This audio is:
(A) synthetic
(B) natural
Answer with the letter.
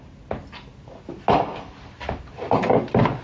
B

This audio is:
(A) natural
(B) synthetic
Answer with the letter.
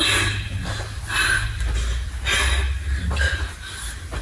A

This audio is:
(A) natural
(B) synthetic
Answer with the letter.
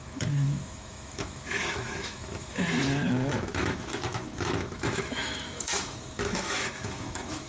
B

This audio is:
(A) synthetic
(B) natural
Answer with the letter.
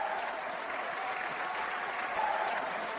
A